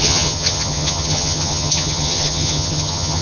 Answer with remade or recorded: remade